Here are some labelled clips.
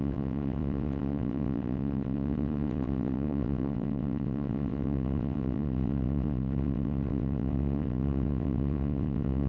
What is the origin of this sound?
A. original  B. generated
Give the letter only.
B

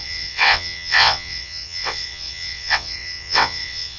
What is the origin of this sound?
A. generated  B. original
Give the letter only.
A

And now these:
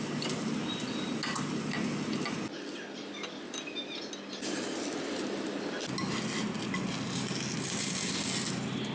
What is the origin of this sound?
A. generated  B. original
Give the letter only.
B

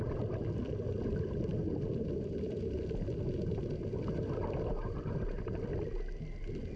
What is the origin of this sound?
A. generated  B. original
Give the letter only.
B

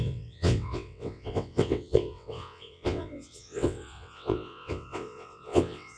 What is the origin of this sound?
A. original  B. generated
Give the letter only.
B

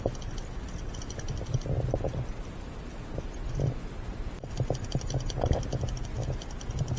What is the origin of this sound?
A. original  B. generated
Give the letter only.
A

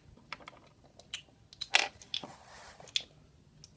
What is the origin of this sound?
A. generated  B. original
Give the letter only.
B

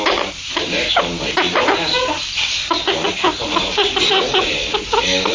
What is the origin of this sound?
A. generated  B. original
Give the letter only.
B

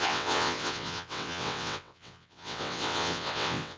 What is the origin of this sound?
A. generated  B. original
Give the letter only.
A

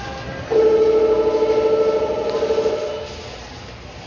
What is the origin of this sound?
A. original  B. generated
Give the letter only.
A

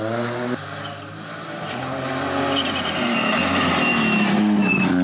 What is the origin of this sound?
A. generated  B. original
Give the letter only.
B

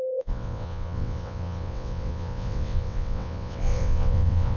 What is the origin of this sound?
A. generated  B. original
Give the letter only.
A